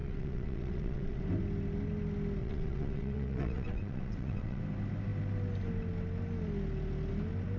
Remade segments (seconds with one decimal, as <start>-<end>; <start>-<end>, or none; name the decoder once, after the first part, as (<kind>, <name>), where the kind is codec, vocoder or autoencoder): 0.0-1.2 (vocoder, WaveNeXt); 2.4-4.6